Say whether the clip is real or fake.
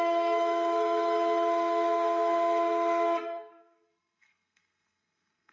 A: fake